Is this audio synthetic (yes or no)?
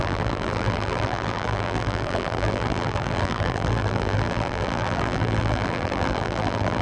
yes